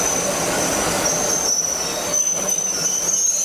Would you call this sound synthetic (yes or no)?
no